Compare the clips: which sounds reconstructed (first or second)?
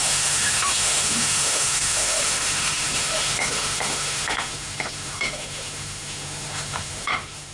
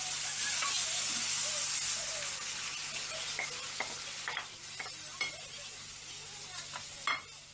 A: first